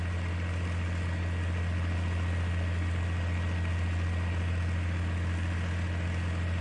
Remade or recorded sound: recorded